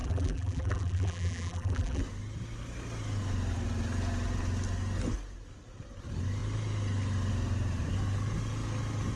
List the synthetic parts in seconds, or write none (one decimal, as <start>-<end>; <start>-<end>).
0.0-2.0

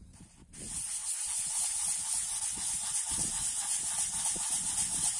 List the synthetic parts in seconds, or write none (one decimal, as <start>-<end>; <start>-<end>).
none